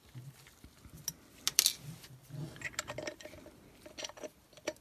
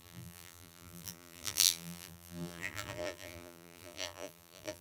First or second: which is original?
first